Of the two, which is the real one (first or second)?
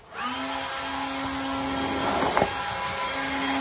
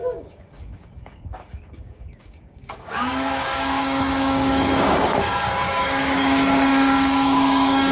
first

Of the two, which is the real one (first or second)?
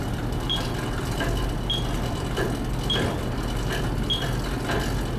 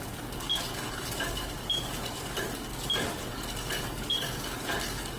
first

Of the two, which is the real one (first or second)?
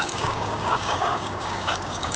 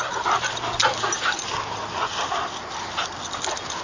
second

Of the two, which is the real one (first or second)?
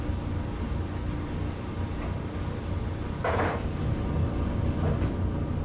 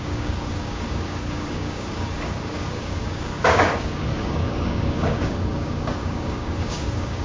first